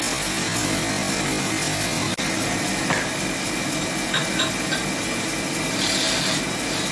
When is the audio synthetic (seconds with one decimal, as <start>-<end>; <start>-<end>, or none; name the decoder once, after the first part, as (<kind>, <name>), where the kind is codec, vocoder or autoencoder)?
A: none